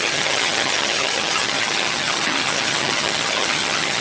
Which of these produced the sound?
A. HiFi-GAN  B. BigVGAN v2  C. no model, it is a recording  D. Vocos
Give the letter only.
A